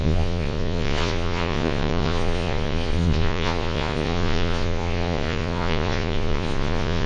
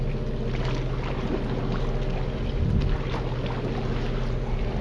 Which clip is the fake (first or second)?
first